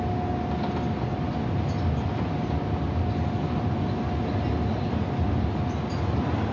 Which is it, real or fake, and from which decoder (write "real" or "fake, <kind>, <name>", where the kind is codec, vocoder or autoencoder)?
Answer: real